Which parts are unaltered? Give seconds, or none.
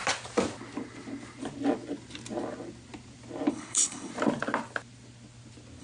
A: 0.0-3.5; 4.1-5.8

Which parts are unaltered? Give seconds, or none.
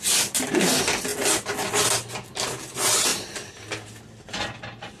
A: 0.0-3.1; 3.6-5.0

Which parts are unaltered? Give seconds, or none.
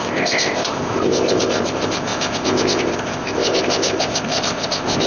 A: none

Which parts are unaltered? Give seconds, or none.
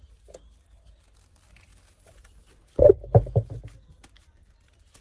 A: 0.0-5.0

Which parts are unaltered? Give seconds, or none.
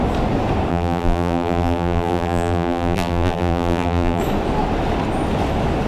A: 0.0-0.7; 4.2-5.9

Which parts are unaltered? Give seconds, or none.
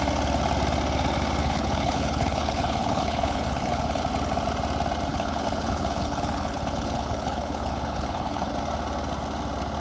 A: 0.0-1.4; 4.0-5.1; 8.5-9.8